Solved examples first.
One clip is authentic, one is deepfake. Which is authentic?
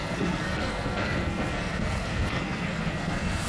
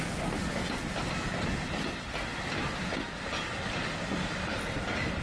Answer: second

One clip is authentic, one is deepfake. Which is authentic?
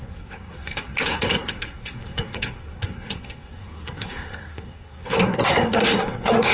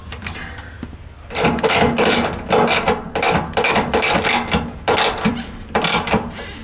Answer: second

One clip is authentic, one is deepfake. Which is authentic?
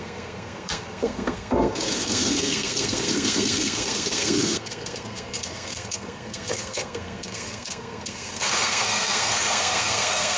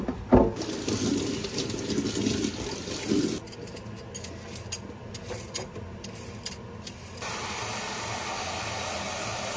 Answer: second